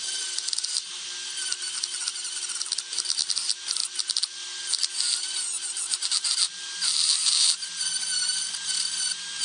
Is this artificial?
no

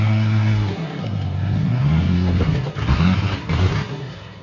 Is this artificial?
yes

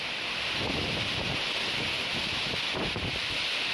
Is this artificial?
no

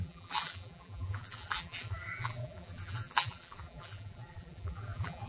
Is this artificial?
yes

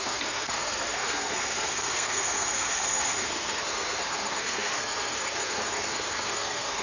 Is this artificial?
yes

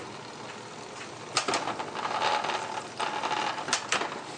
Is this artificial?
no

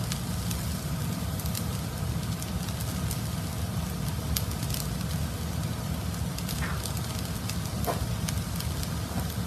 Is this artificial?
no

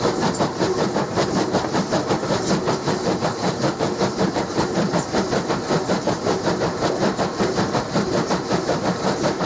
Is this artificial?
yes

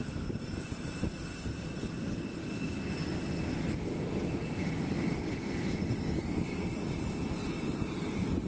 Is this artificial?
no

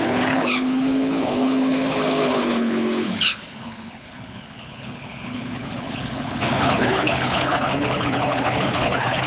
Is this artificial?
yes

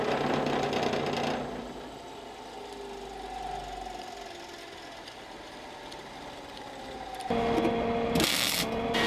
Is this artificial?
no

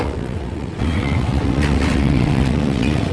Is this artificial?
yes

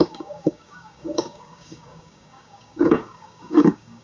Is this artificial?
yes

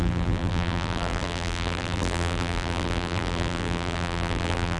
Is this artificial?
yes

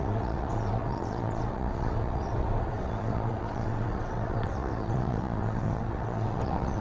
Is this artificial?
yes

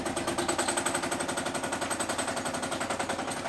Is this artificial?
no